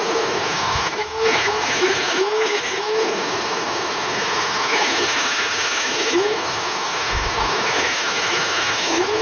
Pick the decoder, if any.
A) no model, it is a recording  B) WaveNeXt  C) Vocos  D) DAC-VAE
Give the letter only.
D